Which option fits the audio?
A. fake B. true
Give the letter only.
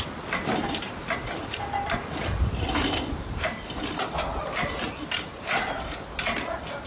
B